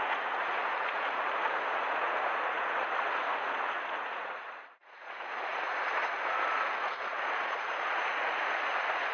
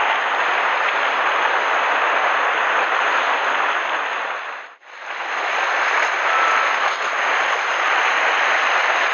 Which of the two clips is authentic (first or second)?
second